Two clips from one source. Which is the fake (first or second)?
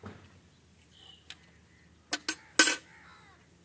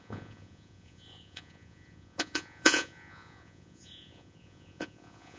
second